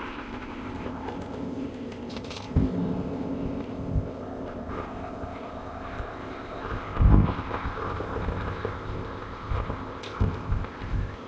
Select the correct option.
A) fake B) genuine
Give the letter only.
A